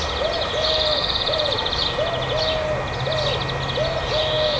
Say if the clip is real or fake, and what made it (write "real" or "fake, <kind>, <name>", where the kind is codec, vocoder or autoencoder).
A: real